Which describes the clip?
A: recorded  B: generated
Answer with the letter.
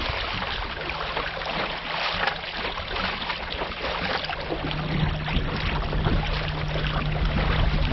A